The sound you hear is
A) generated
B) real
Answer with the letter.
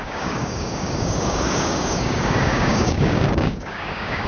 A